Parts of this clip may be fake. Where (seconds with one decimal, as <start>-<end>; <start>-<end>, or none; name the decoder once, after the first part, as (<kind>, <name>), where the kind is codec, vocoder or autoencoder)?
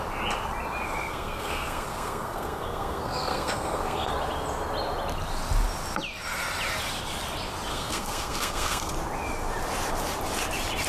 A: 1.0-4.1 (codec, SNAC); 7.7-8.9